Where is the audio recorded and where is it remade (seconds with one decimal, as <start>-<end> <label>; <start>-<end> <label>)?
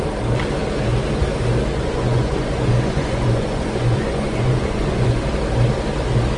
0.0-1.7 recorded; 1.7-5.2 remade; 5.2-6.4 recorded